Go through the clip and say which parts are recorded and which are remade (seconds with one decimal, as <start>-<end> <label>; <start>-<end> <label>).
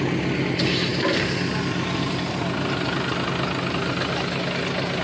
0.0-5.0 recorded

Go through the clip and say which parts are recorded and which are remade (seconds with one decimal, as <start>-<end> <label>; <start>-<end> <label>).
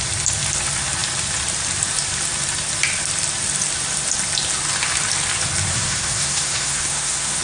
0.0-5.7 recorded; 5.7-7.4 remade